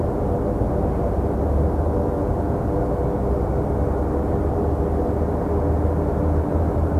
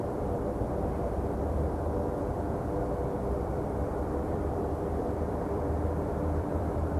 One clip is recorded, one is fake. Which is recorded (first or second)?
first